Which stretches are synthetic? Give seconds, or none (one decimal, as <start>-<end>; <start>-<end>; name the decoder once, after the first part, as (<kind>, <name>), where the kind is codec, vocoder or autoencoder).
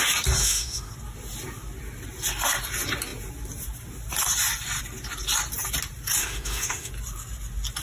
0.4-0.9 (autoencoder, DAC-VAE); 6.2-6.9